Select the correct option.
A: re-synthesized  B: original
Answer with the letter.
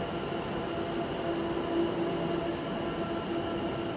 B